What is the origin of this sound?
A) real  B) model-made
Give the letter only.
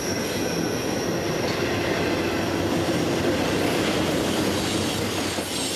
A